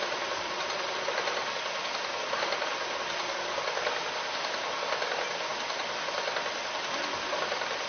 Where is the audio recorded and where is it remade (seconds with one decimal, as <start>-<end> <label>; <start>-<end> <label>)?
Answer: 0.0-7.9 recorded